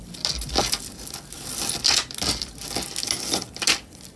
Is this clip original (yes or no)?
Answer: yes